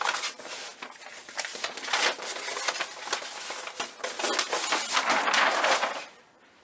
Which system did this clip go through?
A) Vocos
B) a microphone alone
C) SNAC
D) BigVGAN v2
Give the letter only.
B